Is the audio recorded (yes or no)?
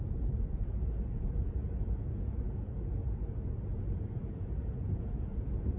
no